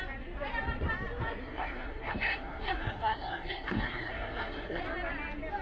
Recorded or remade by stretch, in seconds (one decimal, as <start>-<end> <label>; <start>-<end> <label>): 0.0-1.4 recorded; 1.4-4.8 remade; 4.8-5.6 recorded